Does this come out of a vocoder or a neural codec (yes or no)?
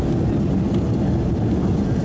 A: no